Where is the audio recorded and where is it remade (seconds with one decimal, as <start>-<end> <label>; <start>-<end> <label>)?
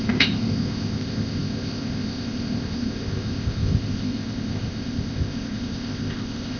0.0-6.6 remade